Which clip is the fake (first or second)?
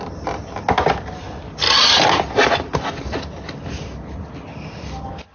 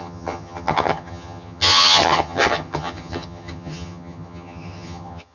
second